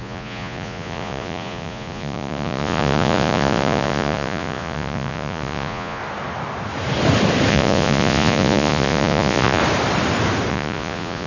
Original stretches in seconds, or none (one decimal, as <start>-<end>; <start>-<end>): 6.0-7.5; 9.6-10.5